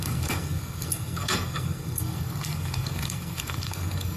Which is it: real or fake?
fake